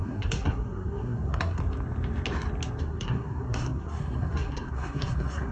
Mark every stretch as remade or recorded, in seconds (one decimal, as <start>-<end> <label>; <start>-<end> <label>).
0.0-1.6 remade; 1.6-2.8 recorded; 2.8-5.5 remade

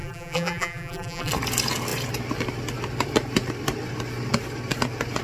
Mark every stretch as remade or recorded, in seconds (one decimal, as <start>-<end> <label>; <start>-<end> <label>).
0.0-1.3 remade; 1.3-5.2 recorded

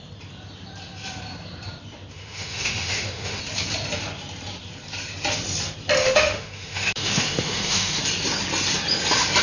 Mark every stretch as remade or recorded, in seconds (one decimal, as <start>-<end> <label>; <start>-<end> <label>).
0.0-2.1 recorded; 2.1-3.4 remade; 3.4-6.0 recorded; 6.0-8.0 remade; 8.0-9.4 recorded

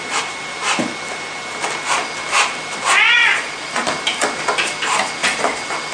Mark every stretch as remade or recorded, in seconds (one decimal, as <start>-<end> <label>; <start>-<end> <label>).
0.0-3.2 recorded; 3.2-3.9 remade; 3.9-5.9 recorded

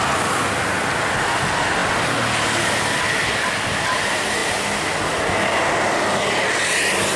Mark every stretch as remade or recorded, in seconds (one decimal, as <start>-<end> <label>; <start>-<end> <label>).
0.0-7.2 recorded

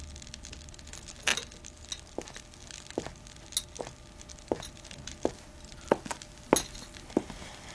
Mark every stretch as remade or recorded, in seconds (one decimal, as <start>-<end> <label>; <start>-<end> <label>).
0.0-7.7 recorded